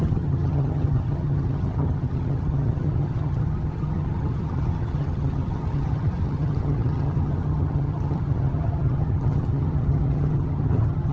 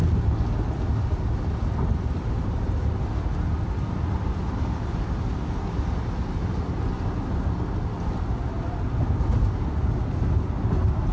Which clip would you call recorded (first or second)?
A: second